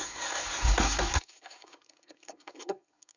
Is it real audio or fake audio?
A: fake